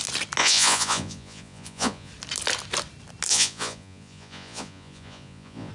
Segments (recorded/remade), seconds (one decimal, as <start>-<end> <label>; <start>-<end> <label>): 0.0-0.4 recorded; 0.4-2.1 remade; 2.1-3.3 recorded; 3.3-5.7 remade